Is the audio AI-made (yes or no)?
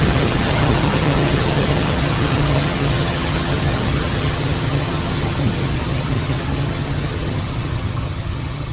yes